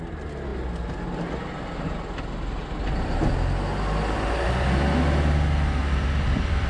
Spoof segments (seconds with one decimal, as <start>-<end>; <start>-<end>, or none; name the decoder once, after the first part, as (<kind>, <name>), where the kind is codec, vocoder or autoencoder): none